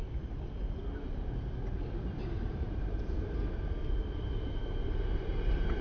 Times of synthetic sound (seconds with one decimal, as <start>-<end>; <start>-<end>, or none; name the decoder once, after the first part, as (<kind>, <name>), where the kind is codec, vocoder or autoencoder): 2.2-5.8 (vocoder, BigVGAN v2)

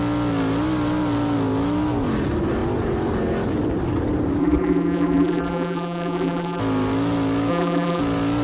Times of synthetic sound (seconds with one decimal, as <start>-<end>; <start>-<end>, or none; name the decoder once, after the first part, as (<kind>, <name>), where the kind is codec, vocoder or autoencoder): 4.4-6.6 (vocoder, BigVGAN v2); 7.5-8.0

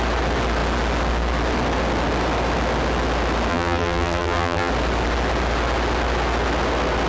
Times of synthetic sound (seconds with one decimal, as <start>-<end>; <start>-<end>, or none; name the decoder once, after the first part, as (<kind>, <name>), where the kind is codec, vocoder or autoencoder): 3.5-4.7 (vocoder, BigVGAN v2)

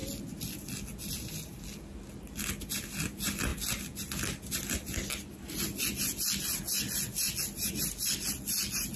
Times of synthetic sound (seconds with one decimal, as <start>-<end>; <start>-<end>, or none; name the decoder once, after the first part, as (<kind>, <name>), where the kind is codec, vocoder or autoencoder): none

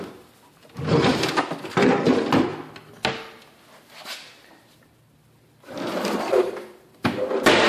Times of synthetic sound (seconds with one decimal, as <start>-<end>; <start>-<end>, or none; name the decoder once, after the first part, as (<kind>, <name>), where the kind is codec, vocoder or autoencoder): none